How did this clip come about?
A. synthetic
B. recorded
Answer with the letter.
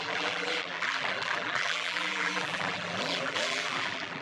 A